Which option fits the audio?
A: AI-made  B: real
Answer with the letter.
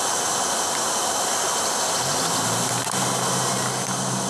B